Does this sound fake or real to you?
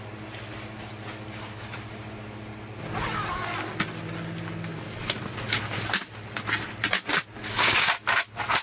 real